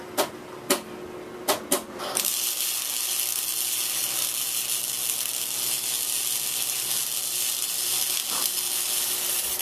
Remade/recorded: recorded